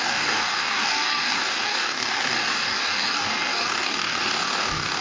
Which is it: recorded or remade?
remade